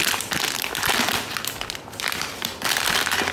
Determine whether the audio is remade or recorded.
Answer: remade